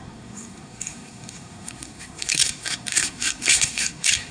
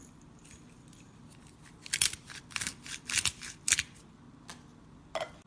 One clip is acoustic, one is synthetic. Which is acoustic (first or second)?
second